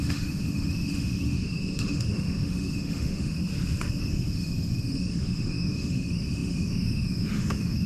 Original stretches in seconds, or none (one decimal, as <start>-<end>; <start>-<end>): 3.4-4.0